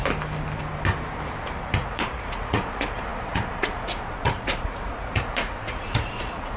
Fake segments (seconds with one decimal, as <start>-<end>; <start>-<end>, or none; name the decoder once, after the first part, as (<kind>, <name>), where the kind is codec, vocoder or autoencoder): 1.8-6.6 (vocoder, Vocos)